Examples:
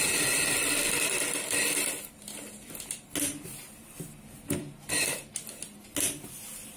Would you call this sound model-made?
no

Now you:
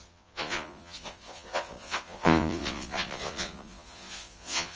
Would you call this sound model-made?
yes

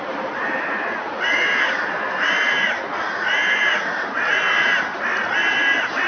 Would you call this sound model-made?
no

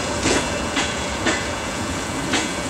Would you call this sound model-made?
yes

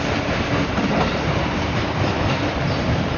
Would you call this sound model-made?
no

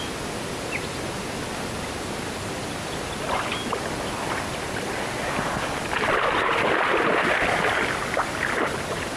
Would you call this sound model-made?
no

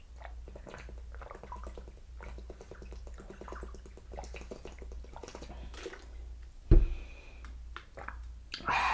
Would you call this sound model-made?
no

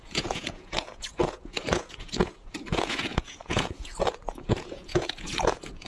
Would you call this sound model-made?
yes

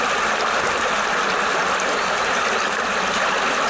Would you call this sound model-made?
no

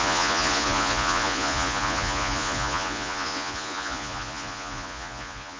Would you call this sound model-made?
yes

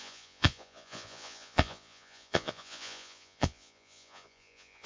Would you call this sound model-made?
yes